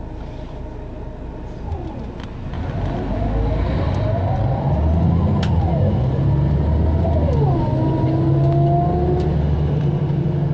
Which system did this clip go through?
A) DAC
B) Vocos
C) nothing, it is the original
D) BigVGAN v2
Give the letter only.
C